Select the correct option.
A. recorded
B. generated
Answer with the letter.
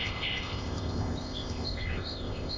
B